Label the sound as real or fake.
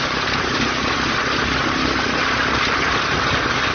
real